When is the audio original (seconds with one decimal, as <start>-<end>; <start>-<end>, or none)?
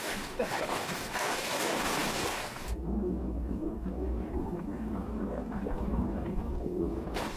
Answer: none